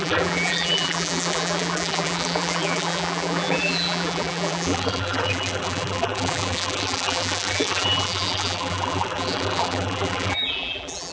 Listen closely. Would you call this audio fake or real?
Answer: fake